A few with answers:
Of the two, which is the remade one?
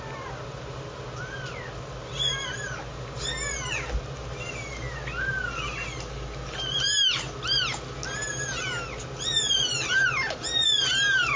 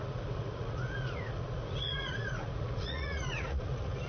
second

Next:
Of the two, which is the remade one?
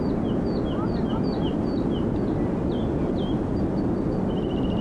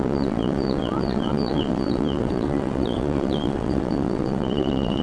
second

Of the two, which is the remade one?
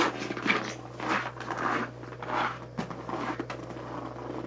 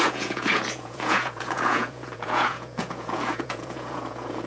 second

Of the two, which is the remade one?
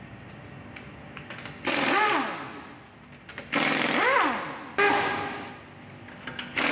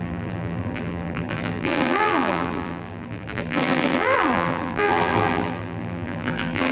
second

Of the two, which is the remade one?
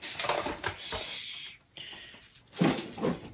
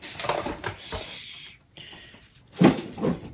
second